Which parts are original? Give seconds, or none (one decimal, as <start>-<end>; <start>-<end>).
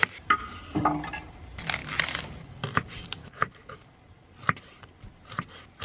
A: 0.0-3.2; 3.9-5.8